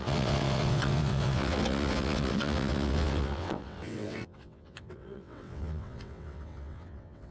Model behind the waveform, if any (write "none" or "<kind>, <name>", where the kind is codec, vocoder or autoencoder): vocoder, WaveNeXt